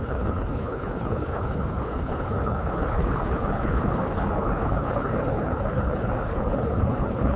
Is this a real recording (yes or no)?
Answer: no